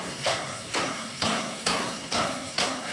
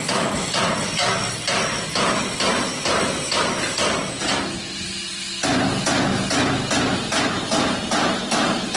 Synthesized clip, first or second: first